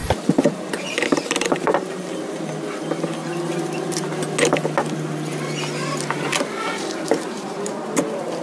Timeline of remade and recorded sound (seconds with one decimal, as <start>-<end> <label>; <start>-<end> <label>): 0.0-2.4 remade; 2.4-6.7 recorded; 6.7-7.7 remade; 7.7-8.4 recorded